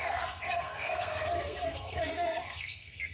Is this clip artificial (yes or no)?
yes